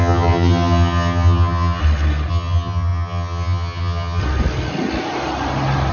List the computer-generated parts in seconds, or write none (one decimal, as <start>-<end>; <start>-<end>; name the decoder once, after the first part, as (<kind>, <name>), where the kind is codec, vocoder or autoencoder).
0.0-1.8 (vocoder, HiFi-GAN); 2.3-4.2